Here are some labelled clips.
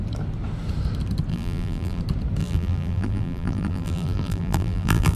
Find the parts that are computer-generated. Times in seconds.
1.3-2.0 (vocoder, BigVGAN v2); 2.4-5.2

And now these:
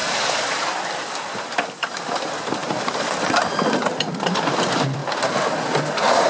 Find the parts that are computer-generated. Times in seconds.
0.0-5.0 (vocoder, BigVGAN v2); 5.7-6.3

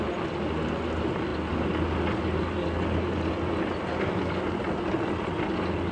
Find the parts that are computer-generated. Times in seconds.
none

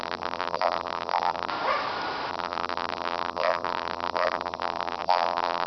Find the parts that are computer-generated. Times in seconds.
0.0-1.5 (vocoder, BigVGAN v2); 2.3-5.7